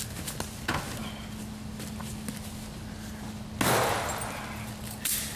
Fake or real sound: real